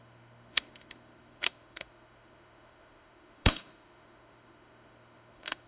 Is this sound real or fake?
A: fake